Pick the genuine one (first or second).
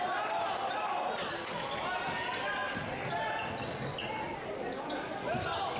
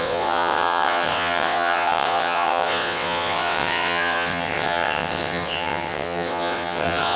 first